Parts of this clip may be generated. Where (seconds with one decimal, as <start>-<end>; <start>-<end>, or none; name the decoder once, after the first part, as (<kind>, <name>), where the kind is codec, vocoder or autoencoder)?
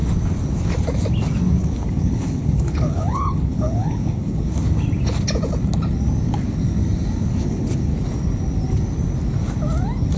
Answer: 1.6-4.5 (codec, HILCodec); 7.3-8.0